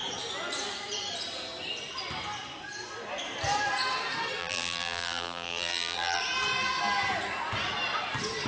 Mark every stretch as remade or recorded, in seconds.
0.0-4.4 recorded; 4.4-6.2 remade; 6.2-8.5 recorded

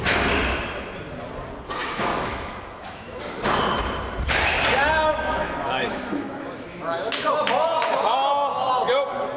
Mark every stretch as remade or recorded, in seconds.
0.0-1.8 recorded; 1.8-3.2 remade; 3.2-5.1 recorded; 5.1-7.3 remade; 7.3-9.4 recorded

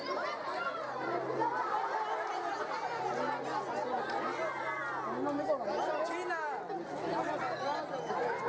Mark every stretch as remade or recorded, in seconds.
0.0-8.5 recorded

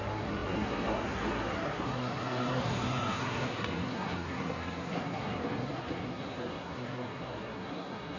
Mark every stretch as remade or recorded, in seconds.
0.0-8.2 remade